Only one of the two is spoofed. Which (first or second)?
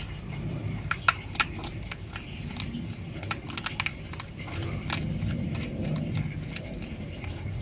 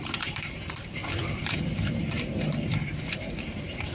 second